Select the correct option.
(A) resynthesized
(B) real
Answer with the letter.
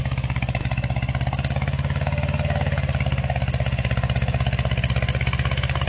B